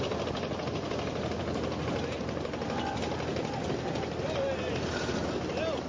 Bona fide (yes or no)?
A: yes